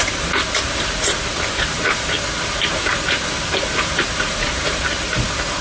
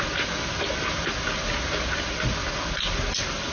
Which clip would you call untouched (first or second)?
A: second